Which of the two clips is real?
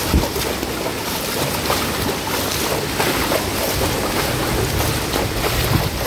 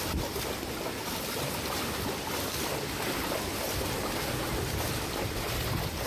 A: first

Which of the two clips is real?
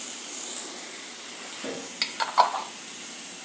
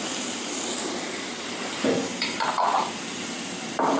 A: first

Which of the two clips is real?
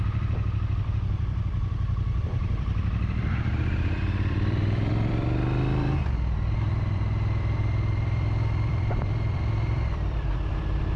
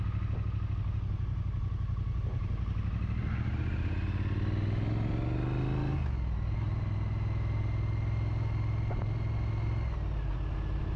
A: second